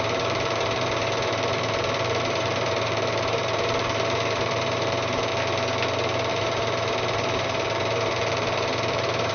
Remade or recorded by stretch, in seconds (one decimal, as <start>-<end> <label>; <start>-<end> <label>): 0.0-5.3 remade; 5.3-6.3 recorded; 6.3-9.3 remade